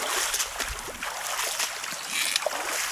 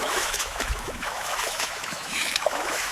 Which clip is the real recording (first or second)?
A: first